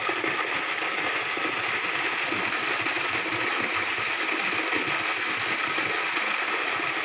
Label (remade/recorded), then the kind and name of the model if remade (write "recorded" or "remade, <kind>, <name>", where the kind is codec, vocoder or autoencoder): recorded